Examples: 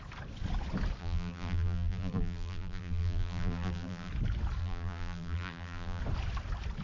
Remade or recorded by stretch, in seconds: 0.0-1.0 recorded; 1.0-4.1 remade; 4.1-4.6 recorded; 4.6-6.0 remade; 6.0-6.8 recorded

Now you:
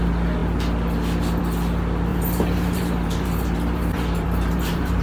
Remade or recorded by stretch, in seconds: 0.0-2.1 recorded; 2.1-5.0 remade

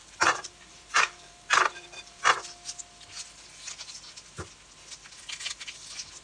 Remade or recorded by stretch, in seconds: 0.0-2.2 remade; 2.2-6.2 recorded

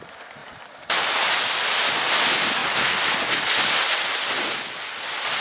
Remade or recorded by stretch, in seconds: 0.0-0.4 recorded; 0.4-2.1 remade; 2.1-5.4 recorded